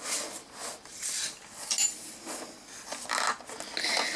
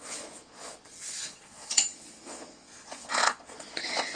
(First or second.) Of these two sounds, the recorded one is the first